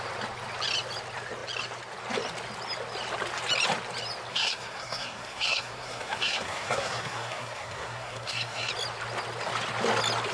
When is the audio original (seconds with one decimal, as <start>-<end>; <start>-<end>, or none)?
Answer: 0.0-4.3; 8.7-10.3